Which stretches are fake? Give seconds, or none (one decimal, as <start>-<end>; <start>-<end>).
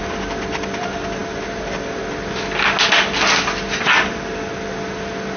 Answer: none